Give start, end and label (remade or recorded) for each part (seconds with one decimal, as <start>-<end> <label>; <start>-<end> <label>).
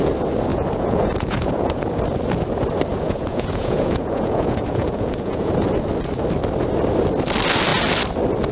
0.0-0.5 recorded; 0.5-1.8 remade; 1.8-2.9 recorded; 2.9-5.5 remade; 5.5-8.5 recorded